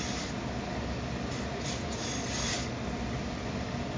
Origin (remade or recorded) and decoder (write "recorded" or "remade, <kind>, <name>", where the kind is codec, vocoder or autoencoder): recorded